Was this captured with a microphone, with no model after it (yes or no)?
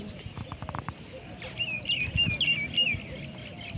yes